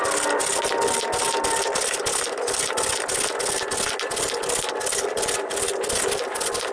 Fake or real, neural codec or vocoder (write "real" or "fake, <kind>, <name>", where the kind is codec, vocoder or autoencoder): real